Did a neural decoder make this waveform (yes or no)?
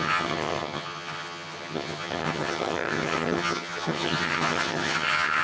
yes